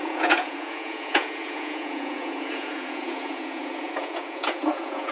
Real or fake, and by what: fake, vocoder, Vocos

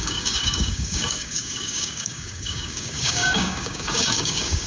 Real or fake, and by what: fake, codec, DAC